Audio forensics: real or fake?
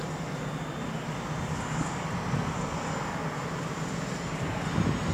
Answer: real